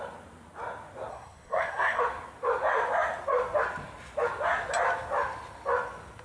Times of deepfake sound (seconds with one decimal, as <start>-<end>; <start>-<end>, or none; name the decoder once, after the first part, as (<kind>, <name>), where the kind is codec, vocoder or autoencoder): 1.1-2.0 (codec, SNAC)